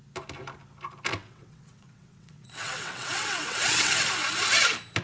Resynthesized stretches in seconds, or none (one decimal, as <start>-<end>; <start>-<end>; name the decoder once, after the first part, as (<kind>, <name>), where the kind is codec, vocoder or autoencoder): 1.1-4.1 (vocoder, WaveNeXt)

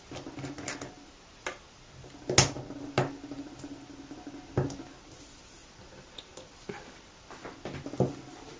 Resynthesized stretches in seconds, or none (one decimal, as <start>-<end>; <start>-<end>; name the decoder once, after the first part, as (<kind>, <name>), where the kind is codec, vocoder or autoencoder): none

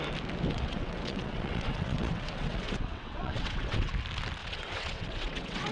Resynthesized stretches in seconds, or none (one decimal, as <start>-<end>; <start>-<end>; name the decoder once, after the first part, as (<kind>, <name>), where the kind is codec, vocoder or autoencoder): 0.5-3.9 (vocoder, WaveNeXt); 4.4-5.7

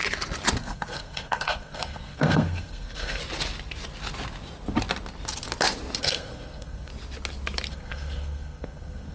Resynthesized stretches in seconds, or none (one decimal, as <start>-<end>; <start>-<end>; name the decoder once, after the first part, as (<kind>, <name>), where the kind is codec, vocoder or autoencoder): 0.6-3.2 (codec, SNAC); 6.0-6.9; 7.7-9.1

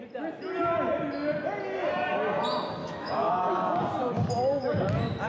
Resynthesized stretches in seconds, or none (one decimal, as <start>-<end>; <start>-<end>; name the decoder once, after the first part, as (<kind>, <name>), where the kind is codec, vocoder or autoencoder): 2.8-3.3 (autoencoder, DAC-VAE)

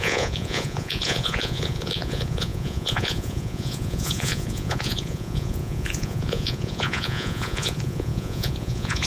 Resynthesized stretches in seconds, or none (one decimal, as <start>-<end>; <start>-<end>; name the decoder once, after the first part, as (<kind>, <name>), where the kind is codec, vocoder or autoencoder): 0.0-9.1 (vocoder, Vocos)

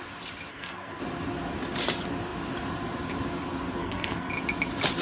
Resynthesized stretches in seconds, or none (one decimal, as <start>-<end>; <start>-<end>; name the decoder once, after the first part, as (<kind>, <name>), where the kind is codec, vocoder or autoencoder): 0.5-1.0 (codec, SNAC); 3.8-4.3

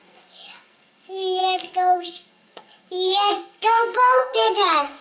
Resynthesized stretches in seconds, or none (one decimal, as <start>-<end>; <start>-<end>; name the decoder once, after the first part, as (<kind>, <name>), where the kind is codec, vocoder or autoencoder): 0.0-5.0 (codec, SNAC)